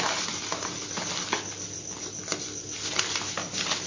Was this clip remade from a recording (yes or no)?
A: no